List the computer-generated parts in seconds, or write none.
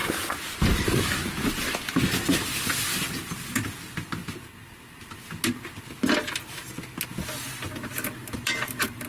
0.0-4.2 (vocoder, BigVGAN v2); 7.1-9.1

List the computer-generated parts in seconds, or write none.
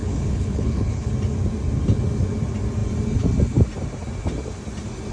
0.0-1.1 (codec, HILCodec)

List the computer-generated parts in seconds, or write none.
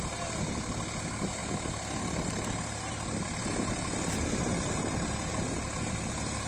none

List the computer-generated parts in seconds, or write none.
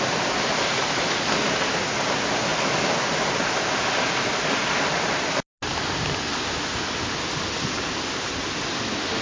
none